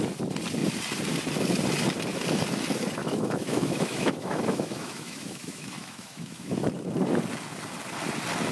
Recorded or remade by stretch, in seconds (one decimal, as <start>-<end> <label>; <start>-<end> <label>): 0.0-3.0 recorded; 3.0-6.7 remade; 6.7-8.5 recorded